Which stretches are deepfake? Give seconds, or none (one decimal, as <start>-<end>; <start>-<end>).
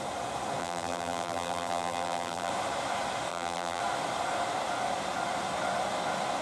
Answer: 0.6-2.5; 3.3-3.8